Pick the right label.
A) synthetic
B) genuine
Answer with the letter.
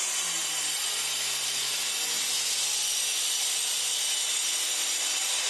B